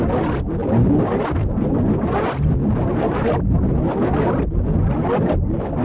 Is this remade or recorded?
recorded